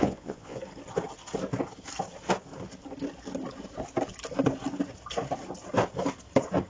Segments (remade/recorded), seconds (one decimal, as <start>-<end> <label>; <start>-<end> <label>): 0.0-0.6 remade; 0.6-6.7 recorded